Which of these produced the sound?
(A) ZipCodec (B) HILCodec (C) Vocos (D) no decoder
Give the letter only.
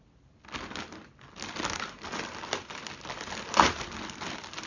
D